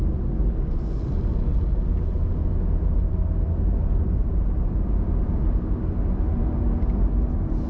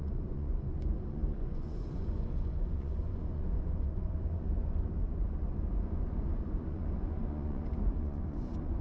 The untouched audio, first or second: first